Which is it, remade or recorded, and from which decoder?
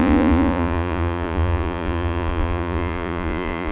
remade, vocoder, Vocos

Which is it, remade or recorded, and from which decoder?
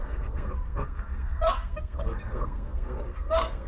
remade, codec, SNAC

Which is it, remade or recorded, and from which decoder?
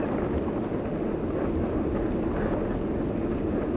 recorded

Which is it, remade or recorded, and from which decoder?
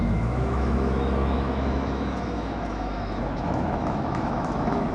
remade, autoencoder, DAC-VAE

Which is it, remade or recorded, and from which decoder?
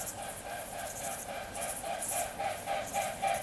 remade, vocoder, BigVGAN v2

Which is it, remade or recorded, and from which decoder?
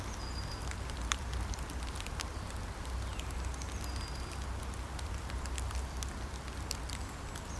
recorded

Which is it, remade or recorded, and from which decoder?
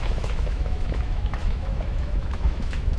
remade, autoencoder, DAC-VAE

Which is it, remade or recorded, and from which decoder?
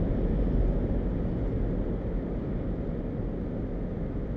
recorded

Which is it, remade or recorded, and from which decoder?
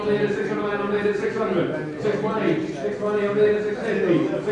recorded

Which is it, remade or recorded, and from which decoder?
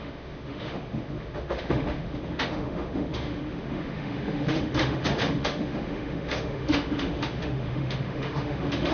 remade, autoencoder, DAC-VAE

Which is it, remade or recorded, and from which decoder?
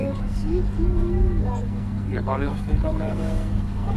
remade, codec, SNAC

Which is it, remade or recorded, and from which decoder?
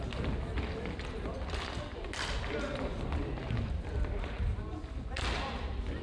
recorded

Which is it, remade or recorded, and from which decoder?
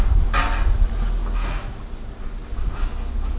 recorded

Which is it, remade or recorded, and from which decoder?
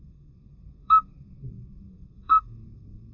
remade, codec, SNAC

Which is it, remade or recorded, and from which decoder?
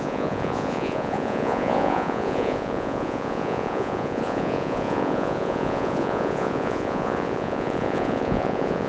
remade, vocoder, Vocos